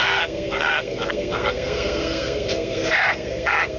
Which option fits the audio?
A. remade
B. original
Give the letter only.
A